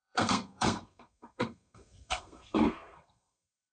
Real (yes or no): no